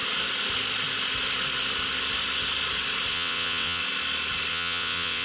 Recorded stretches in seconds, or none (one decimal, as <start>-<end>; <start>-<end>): 0.0-3.1; 3.8-4.5